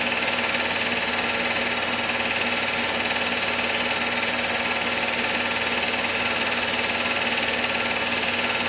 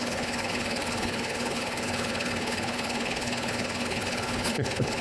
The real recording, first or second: first